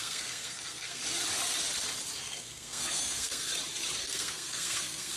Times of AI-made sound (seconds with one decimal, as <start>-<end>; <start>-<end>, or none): 0.0-1.0; 2.2-3.5; 4.0-5.2